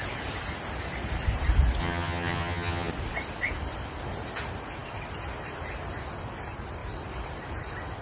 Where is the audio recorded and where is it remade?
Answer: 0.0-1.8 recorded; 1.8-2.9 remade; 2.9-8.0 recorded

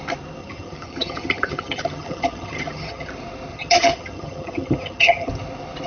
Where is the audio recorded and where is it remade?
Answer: 0.0-0.4 recorded; 0.4-3.1 remade; 3.1-3.5 recorded; 3.5-5.3 remade; 5.3-5.9 recorded

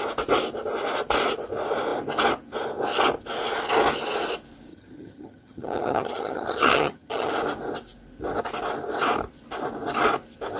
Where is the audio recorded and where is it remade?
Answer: 0.0-4.7 recorded; 4.7-7.3 remade; 7.3-10.6 recorded

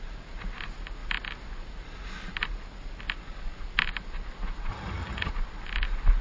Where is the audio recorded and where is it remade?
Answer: 0.0-4.7 recorded; 4.7-5.3 remade; 5.3-6.2 recorded

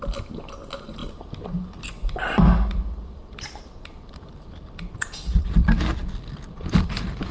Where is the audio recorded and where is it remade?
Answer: 0.0-7.3 recorded

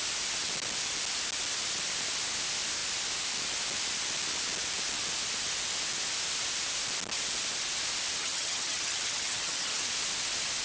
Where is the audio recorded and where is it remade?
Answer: 0.0-8.2 recorded; 8.2-9.8 remade; 9.8-10.6 recorded